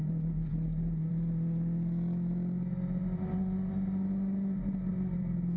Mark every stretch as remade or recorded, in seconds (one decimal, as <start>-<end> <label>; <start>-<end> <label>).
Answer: 0.0-5.6 recorded